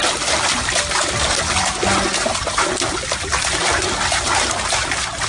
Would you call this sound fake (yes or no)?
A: no